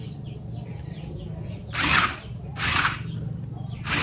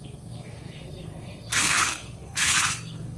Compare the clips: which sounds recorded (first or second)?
first